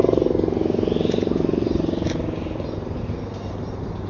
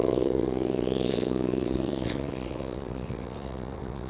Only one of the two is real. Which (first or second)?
first